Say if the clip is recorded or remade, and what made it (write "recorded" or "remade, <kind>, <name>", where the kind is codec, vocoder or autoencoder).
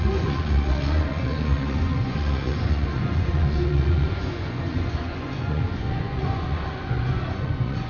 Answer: remade, vocoder, Vocos